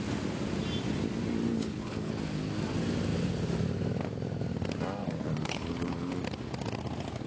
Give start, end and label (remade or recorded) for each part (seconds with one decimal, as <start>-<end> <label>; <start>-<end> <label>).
0.0-1.5 recorded; 1.5-2.2 remade; 2.2-5.0 recorded; 5.0-6.1 remade; 6.1-7.3 recorded